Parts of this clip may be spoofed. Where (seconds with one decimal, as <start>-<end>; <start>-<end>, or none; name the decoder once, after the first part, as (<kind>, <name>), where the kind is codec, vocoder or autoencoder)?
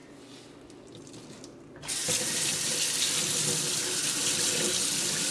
none